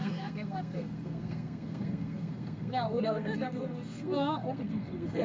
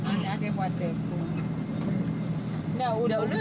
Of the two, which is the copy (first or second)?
first